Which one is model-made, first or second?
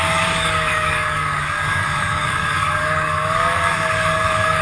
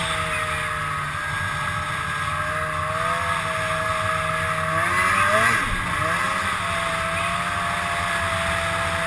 first